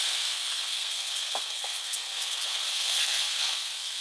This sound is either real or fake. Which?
fake